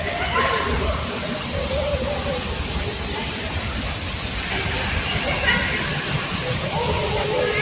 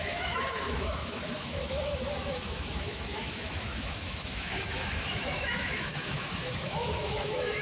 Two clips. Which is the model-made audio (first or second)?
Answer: second